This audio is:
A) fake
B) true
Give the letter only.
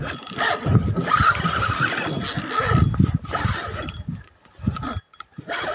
B